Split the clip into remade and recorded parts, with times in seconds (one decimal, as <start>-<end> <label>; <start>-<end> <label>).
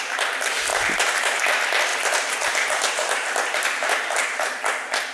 0.0-0.7 recorded; 0.7-1.4 remade; 1.4-1.9 recorded; 1.9-4.6 remade; 4.6-5.1 recorded